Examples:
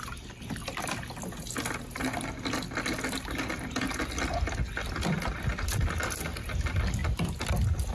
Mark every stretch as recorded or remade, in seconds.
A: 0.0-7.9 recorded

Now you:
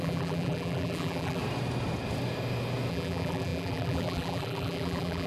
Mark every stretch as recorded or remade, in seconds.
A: 0.0-1.4 remade; 1.4-2.9 recorded; 2.9-5.3 remade

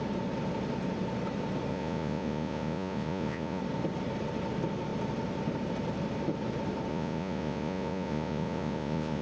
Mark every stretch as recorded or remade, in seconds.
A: 0.0-1.7 recorded; 1.7-3.6 remade; 3.6-6.9 recorded; 6.9-9.2 remade

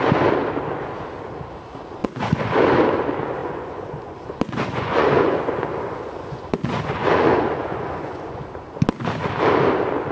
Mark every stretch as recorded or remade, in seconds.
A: 0.0-2.0 recorded; 2.0-2.5 remade; 2.5-3.4 recorded; 3.4-8.4 remade; 8.4-10.1 recorded

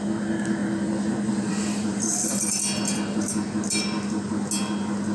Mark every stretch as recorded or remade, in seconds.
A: 0.0-0.6 recorded; 0.6-2.6 remade; 2.6-5.1 recorded

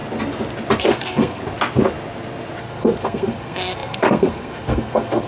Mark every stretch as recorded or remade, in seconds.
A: 0.0-0.8 recorded; 0.8-1.4 remade; 1.4-2.6 recorded; 2.6-5.3 remade

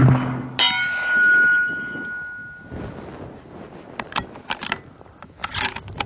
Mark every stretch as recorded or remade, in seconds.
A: 0.0-6.1 recorded

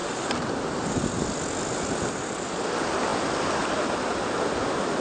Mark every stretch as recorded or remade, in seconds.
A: 0.0-5.0 recorded